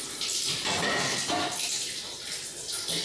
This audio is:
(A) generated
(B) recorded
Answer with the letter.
B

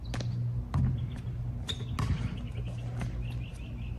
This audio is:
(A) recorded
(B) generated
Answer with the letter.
A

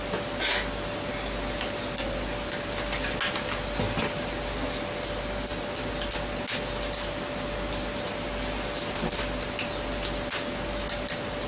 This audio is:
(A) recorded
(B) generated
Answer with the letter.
A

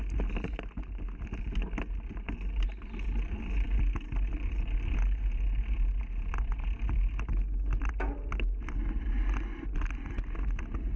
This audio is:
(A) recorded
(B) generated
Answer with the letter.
A